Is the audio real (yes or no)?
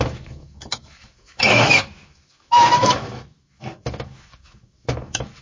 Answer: no